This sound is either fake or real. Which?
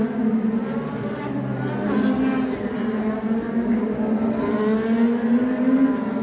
real